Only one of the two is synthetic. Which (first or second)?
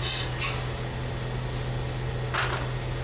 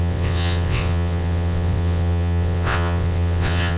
second